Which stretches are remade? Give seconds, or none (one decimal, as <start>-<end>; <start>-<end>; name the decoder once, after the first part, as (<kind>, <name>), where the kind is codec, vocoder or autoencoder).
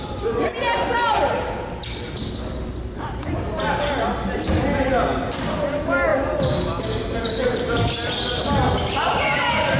none